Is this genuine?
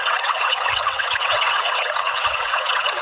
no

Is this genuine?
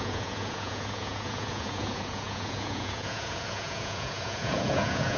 no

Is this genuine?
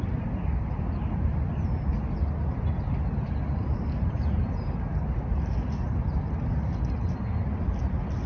yes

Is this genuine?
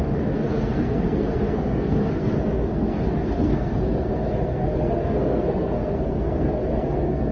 no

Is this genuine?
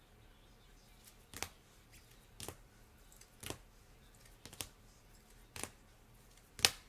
yes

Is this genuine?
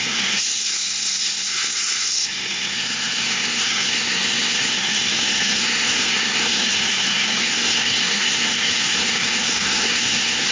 no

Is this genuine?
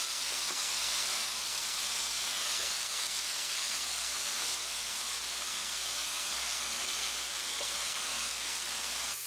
no